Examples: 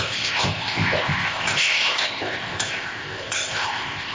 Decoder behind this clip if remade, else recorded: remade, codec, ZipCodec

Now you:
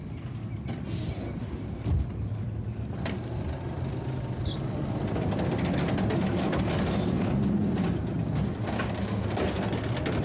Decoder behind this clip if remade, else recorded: recorded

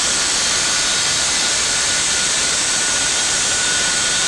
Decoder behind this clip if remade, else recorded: remade, vocoder, BigVGAN v2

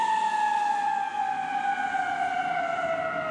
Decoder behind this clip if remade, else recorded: recorded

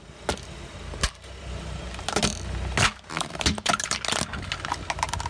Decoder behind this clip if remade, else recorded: recorded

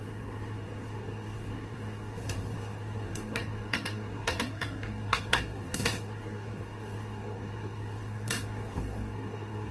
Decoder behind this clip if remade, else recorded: remade, codec, SNAC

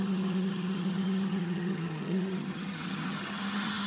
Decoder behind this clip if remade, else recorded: remade, vocoder, HiFi-GAN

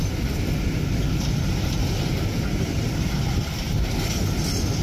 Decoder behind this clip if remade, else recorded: recorded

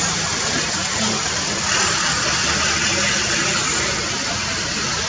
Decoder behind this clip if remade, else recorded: recorded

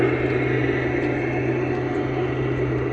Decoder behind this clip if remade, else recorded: recorded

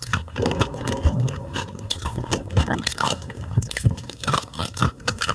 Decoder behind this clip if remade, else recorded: remade, codec, SNAC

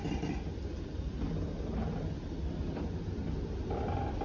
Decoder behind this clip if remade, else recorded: recorded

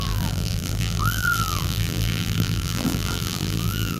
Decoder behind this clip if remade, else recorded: remade, vocoder, BigVGAN v2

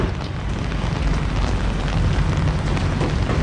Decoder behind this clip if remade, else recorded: recorded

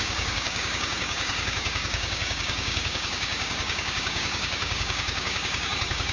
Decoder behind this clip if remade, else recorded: remade, codec, DAC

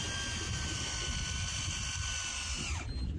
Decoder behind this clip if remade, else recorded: recorded